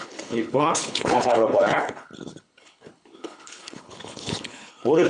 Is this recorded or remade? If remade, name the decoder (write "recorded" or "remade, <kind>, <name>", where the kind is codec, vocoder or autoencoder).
remade, codec, HILCodec